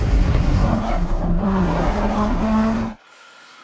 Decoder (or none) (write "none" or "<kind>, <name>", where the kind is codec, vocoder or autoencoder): codec, SNAC